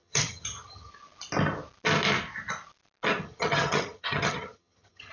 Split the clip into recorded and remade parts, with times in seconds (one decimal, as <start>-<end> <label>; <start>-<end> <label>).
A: 0.0-0.9 remade; 0.9-3.2 recorded; 3.2-5.1 remade